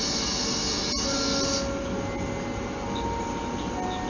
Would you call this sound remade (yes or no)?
no